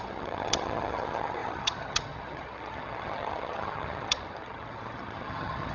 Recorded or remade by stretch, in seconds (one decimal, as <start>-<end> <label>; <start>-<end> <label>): 0.0-5.7 remade